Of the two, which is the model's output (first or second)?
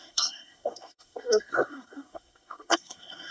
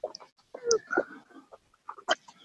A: first